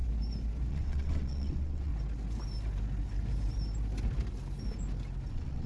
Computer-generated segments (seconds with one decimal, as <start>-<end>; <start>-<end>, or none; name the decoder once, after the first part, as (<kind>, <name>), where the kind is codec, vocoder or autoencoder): 0.7-1.9 (vocoder, WaveNeXt); 5.3-5.7